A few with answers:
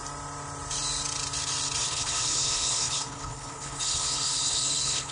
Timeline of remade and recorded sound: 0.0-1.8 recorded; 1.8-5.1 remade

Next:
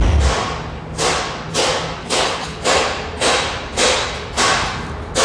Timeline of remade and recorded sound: 0.0-2.0 recorded; 2.0-2.6 remade; 2.6-5.2 recorded

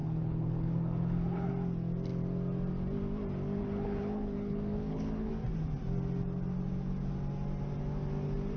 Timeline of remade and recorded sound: 0.0-1.5 remade; 1.5-3.6 recorded; 3.6-5.3 remade; 5.3-8.6 recorded

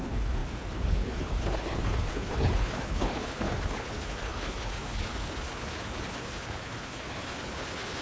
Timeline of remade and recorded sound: 0.0-8.0 remade